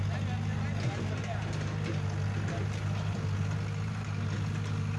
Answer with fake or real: real